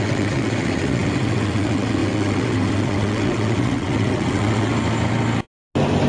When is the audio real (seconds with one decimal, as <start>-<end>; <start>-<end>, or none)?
4.7-6.1